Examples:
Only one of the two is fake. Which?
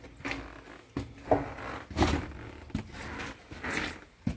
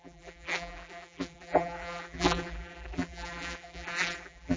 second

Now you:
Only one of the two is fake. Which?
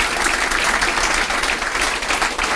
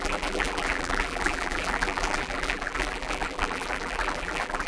second